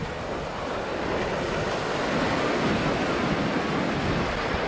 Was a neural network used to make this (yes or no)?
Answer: no